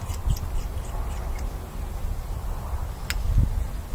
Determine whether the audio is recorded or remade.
recorded